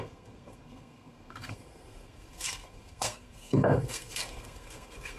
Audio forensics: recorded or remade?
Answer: remade